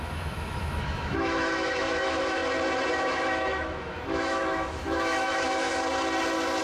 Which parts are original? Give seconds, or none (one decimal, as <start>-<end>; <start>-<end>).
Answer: 2.4-2.9; 5.7-6.6

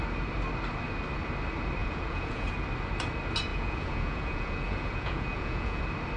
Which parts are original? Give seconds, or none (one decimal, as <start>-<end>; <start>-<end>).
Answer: 0.0-1.8; 2.5-3.5; 5.8-6.2

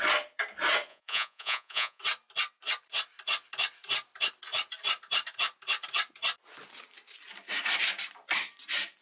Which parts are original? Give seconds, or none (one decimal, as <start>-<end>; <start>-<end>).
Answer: 0.0-0.9; 2.0-9.0

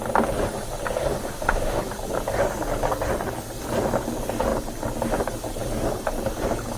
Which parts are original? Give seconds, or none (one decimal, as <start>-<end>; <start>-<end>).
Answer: 0.0-1.2; 1.8-6.8